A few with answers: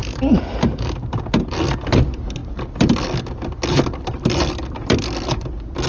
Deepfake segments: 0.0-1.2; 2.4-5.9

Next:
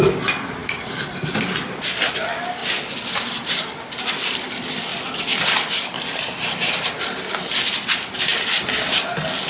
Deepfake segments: 0.0-2.6; 3.5-8.3

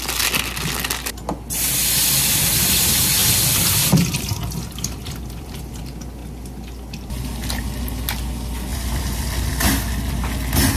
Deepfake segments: 3.2-5.8; 8.7-9.5

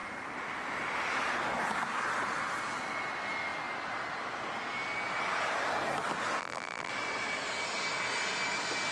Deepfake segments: 6.4-6.9

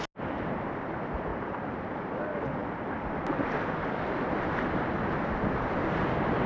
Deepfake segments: 1.3-2.2

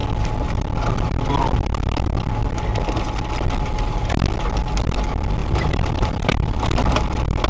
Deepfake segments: 5.4-6.6

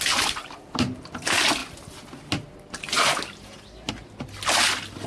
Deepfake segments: none